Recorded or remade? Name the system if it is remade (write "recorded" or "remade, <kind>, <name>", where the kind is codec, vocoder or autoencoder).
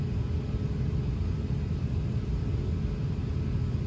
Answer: recorded